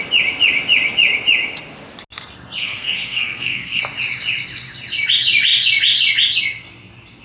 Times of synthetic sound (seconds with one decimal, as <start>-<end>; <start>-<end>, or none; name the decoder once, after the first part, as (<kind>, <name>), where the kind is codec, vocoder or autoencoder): 2.6-3.8 (codec, SNAC)